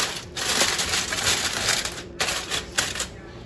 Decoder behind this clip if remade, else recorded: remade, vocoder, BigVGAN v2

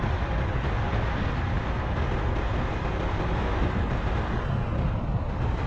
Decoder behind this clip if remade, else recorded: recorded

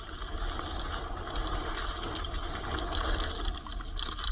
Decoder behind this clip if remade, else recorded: recorded